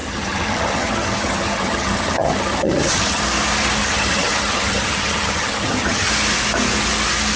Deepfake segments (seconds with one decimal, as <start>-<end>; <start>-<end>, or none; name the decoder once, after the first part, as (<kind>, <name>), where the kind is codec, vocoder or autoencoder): 0.0-3.2 (vocoder, HiFi-GAN); 3.8-6.1